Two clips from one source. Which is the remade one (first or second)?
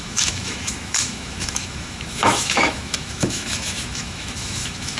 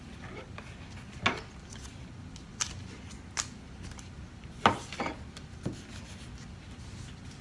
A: first